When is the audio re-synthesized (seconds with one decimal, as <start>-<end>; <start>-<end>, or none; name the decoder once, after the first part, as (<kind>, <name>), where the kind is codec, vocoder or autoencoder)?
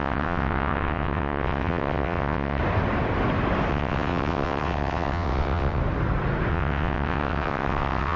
0.0-2.6 (vocoder, WaveNeXt); 3.7-5.8; 6.5-8.2